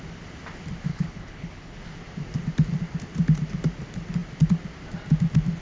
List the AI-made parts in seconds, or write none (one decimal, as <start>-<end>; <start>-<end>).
0.9-1.8